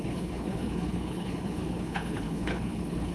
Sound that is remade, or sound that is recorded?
remade